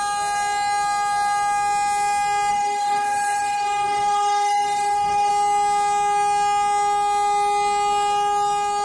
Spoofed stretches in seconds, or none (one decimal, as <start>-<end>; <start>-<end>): 2.5-5.3